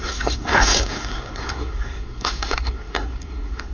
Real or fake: fake